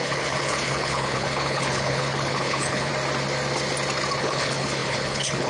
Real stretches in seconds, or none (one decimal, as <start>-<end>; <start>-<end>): 2.9-4.2